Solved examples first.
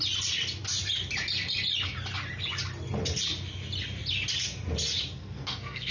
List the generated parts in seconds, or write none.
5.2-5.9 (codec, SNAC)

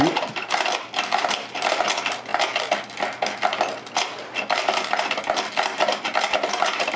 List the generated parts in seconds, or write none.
none

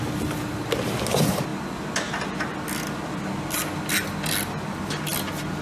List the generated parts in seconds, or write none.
none

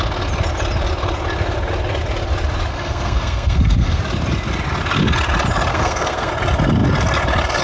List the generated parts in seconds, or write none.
2.7-4.0 (codec, SNAC); 5.7-6.3

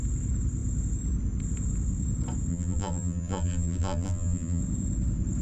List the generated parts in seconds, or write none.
2.5-4.6 (vocoder, BigVGAN v2)